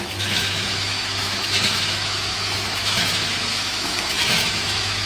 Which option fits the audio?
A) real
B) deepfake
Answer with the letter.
B